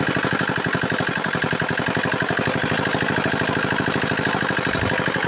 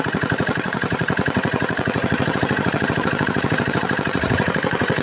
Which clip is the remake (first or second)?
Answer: second